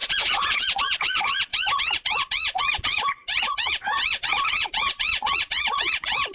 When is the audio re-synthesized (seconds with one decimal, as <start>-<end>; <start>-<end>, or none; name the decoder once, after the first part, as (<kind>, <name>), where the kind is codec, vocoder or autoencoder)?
0.0-6.3 (vocoder, Vocos)